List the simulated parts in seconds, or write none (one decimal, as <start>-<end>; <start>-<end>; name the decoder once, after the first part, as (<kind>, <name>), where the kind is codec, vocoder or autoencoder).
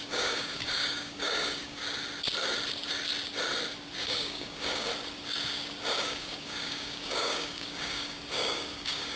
0.0-1.8 (codec, DAC); 4.0-4.9; 6.0-9.2